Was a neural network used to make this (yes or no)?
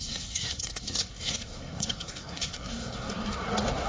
yes